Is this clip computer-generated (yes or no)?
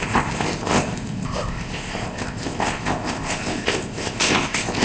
yes